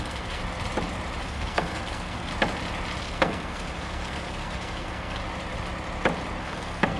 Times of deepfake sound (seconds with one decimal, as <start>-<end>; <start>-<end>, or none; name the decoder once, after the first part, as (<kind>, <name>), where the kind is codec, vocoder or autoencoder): 0.0-0.4 (codec, SNAC); 1.2-2.3; 3.0-5.2; 6.4-7.0